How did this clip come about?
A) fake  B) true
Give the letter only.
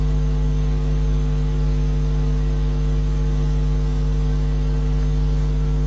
A